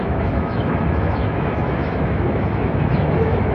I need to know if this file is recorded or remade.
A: remade